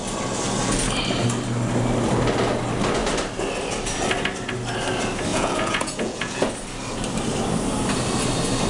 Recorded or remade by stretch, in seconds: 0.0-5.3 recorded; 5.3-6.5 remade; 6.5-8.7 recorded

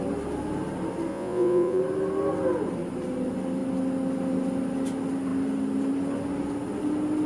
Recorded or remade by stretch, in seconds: 0.0-1.1 recorded; 1.1-1.8 remade; 1.8-7.3 recorded

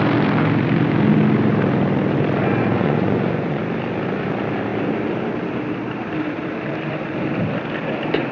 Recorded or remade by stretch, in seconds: 0.0-2.4 recorded; 2.4-3.6 remade; 3.6-8.3 recorded

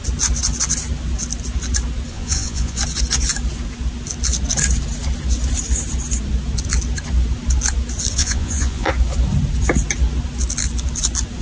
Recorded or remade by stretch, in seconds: 0.0-2.1 recorded; 2.1-2.8 remade; 2.8-8.2 recorded; 8.2-8.9 remade; 8.9-11.4 recorded

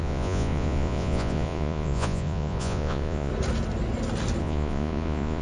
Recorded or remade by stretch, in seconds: 0.0-3.3 remade; 3.3-4.4 recorded; 4.4-5.4 remade